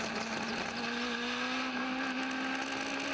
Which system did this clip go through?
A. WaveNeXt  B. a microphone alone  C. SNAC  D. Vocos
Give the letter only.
B